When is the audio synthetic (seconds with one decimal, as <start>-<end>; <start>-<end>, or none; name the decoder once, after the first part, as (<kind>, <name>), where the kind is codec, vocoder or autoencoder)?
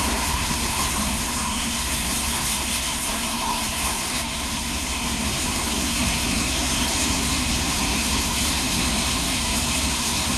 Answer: 0.0-10.4 (codec, SNAC)